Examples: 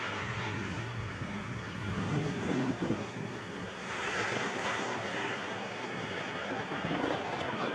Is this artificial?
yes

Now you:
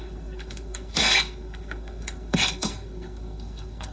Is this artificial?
yes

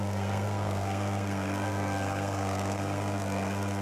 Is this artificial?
yes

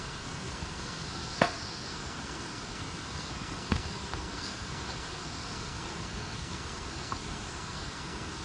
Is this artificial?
yes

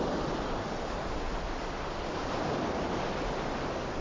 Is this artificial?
no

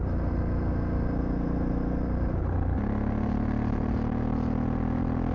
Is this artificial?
no